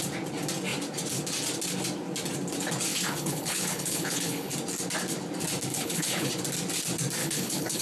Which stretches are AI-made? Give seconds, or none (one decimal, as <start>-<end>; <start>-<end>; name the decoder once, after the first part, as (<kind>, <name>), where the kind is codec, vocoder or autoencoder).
2.9-4.5 (codec, HILCodec); 5.7-6.3; 7.2-7.8